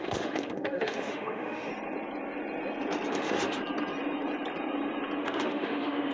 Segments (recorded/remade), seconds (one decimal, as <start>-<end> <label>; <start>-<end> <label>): 0.0-1.7 remade; 1.7-3.1 recorded; 3.1-3.6 remade; 3.6-5.2 recorded; 5.2-6.1 remade